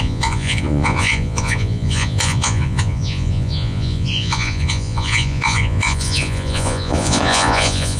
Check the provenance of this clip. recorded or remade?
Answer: remade